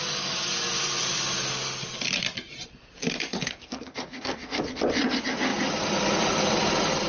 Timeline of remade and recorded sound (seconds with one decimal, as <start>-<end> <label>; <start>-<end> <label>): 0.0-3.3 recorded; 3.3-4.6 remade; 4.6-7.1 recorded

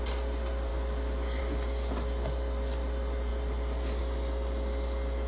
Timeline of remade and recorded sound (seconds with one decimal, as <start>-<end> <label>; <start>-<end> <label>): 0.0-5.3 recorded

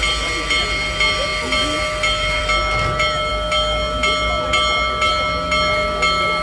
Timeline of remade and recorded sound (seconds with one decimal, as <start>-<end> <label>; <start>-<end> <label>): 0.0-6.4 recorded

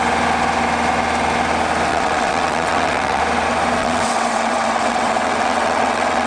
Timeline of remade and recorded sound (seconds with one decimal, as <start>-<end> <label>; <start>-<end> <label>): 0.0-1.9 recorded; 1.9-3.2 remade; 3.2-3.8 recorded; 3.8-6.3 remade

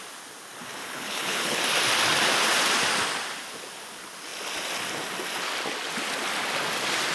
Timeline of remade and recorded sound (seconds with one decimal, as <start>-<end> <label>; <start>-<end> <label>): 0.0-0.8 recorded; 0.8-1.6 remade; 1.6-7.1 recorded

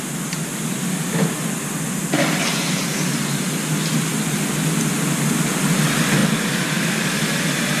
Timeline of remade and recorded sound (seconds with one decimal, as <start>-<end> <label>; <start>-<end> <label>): 0.0-7.8 recorded

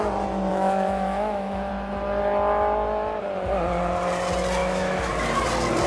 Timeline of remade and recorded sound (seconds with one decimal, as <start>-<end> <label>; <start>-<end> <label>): 0.0-0.5 recorded; 0.5-1.7 remade; 1.7-4.6 recorded; 4.6-5.1 remade; 5.1-5.9 recorded

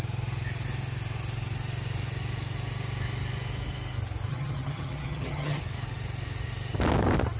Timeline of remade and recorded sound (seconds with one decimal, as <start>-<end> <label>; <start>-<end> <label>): 0.0-4.3 recorded; 4.3-5.6 remade; 5.6-7.4 recorded